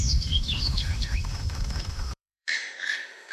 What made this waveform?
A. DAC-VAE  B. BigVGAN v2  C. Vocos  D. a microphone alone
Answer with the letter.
A